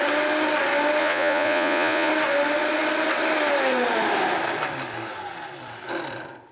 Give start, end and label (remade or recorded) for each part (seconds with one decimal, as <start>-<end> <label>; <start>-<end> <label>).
0.0-1.0 recorded; 1.0-2.1 remade; 2.1-6.5 recorded